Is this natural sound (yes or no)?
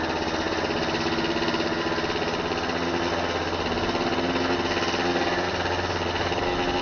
yes